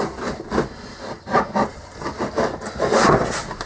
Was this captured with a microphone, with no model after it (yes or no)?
yes